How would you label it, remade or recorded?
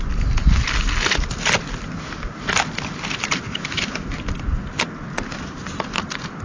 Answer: recorded